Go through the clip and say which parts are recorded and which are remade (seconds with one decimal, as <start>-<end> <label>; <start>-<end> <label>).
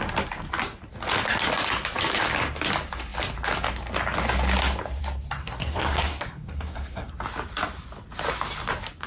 0.0-5.4 recorded; 5.4-7.1 remade; 7.1-9.1 recorded